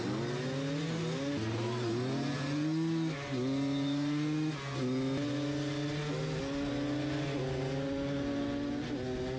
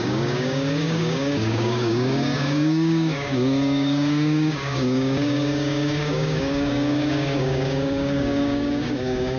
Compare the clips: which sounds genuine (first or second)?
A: first